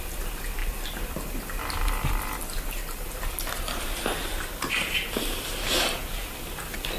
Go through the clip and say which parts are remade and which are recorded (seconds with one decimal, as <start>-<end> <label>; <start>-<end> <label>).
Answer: 0.0-7.0 recorded